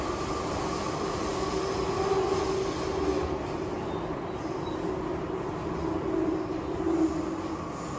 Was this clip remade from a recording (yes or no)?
no